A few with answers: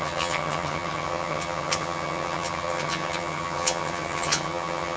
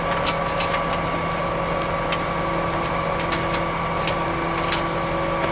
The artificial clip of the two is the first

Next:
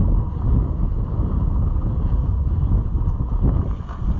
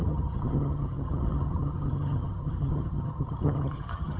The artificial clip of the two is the second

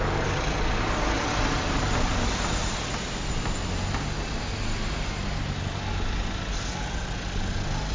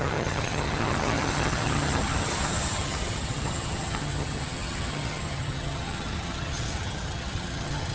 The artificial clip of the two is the second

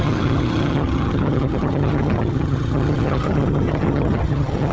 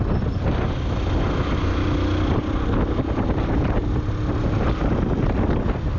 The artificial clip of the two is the first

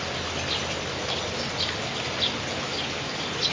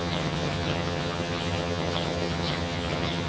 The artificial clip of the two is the second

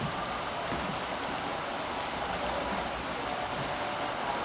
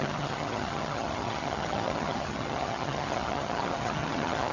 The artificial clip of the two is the second